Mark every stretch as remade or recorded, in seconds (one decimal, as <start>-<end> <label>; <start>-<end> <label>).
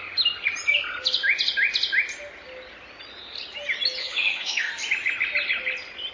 0.0-4.0 recorded; 4.0-4.7 remade; 4.7-6.1 recorded